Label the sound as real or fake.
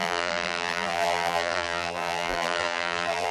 fake